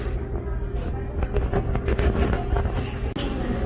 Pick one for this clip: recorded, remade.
recorded